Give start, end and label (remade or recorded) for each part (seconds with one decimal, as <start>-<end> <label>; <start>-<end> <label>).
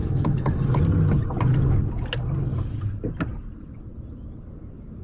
0.0-0.8 remade; 0.8-5.0 recorded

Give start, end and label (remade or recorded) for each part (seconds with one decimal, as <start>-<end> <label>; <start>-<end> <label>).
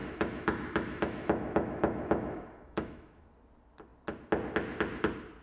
0.0-3.2 remade; 3.2-5.4 recorded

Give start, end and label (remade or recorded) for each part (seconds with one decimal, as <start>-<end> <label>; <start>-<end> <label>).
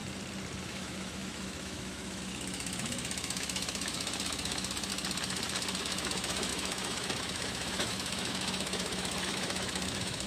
0.0-0.6 recorded; 0.6-4.9 remade; 4.9-5.8 recorded; 5.8-10.3 remade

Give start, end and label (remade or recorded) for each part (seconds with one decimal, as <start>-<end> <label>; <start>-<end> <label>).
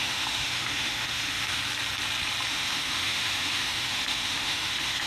0.0-1.6 remade; 1.6-2.5 recorded; 2.5-5.1 remade